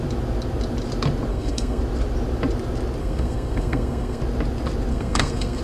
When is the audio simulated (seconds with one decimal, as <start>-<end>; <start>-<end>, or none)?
1.3-1.8; 3.0-4.2; 4.9-5.6